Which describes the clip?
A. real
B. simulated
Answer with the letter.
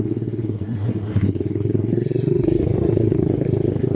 B